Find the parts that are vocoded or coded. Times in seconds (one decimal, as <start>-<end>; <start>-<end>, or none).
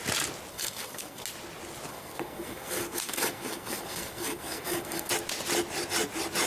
0.5-1.2; 1.9-5.1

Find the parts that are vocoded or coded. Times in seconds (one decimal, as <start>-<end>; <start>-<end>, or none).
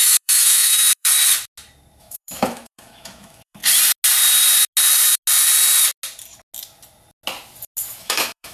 0.0-1.1; 2.0-3.6; 8.0-8.5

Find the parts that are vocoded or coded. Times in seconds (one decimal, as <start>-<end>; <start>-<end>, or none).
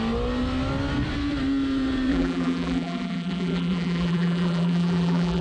2.1-5.4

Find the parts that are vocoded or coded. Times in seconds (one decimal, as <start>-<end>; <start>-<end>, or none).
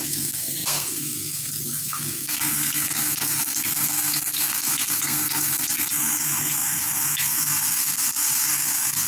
0.0-9.1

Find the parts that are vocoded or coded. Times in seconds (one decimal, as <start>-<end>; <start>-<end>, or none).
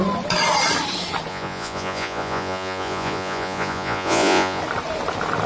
1.3-4.6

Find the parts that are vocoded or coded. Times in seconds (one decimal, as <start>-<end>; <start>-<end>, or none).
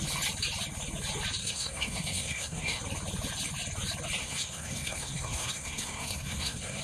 1.4-2.8; 4.2-6.8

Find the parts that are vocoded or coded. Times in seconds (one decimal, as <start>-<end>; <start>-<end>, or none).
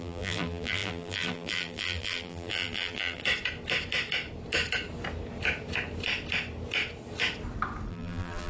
0.0-3.2; 7.9-8.5